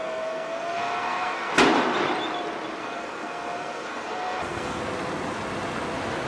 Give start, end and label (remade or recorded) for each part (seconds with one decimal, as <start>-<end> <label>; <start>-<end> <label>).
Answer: 0.0-1.5 remade; 1.5-2.8 recorded; 2.8-4.8 remade; 4.8-6.3 recorded